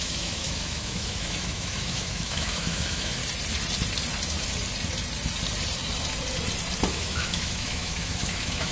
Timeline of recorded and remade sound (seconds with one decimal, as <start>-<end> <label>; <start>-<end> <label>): 0.0-3.2 remade; 3.2-6.9 recorded; 6.9-8.7 remade